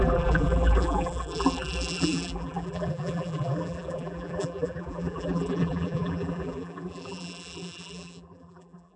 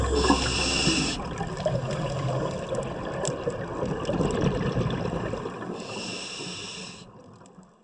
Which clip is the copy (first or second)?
first